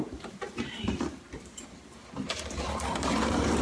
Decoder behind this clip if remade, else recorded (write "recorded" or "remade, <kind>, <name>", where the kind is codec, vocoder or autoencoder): remade, vocoder, BigVGAN v2